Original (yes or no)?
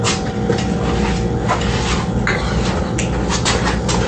yes